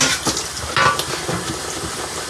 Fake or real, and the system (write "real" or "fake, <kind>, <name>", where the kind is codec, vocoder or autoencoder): real